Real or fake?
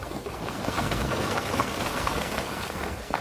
fake